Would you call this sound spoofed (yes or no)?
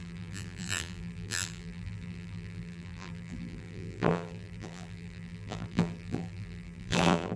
yes